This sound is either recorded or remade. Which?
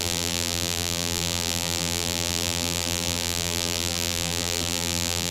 remade